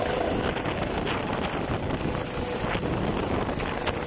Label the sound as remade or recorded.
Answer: recorded